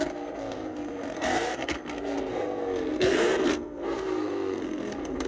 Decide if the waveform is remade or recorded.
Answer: remade